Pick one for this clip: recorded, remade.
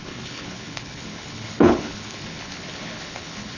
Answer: remade